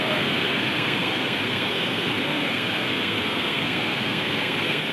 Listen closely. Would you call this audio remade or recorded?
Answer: remade